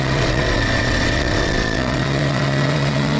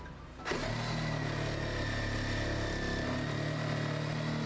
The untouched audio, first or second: second